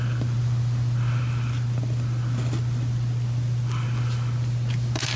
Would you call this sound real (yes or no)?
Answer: yes